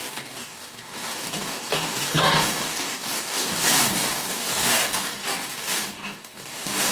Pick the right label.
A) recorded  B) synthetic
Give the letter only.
B